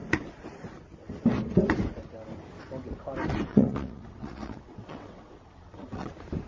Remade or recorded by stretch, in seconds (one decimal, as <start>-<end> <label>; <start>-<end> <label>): 0.0-3.5 recorded; 3.5-6.1 remade; 6.1-6.5 recorded